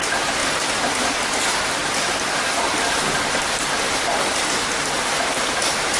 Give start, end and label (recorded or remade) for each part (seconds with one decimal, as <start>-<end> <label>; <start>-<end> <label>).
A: 0.0-6.0 recorded

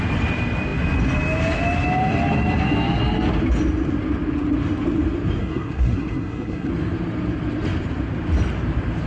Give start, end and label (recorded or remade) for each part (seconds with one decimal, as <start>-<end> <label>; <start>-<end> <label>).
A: 0.0-5.4 recorded; 5.4-6.7 remade; 6.7-9.1 recorded

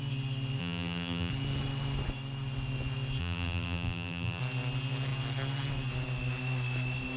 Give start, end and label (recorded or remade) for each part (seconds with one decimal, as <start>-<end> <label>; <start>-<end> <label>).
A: 0.0-0.6 recorded; 0.6-1.3 remade; 1.3-3.2 recorded; 3.2-4.4 remade; 4.4-7.2 recorded

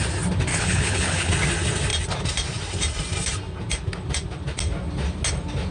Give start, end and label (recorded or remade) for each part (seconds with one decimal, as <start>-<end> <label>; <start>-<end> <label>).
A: 0.0-0.5 recorded; 0.5-1.3 remade; 1.3-5.7 recorded